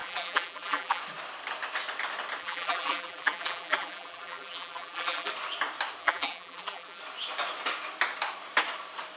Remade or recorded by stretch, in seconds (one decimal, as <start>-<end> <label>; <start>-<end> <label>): 0.0-1.0 remade; 1.0-2.4 recorded; 2.4-5.3 remade; 5.3-6.0 recorded; 6.0-7.0 remade; 7.0-9.2 recorded